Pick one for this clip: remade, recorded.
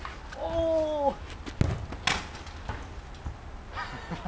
recorded